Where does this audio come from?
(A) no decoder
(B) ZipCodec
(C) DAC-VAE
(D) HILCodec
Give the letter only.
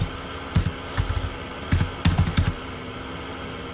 A